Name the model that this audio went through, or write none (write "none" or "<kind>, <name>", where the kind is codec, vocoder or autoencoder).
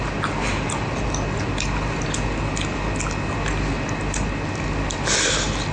none